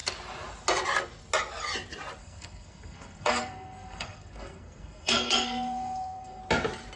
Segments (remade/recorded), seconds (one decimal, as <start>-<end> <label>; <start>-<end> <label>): 0.0-2.2 recorded; 2.2-6.4 remade; 6.4-7.0 recorded